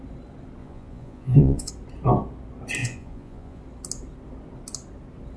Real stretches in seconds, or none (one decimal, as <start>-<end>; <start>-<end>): 0.0-0.6; 1.7-2.8; 3.6-5.4